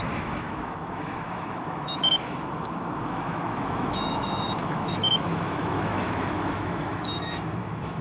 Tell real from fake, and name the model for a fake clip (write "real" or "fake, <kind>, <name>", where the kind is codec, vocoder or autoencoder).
fake, autoencoder, DAC-VAE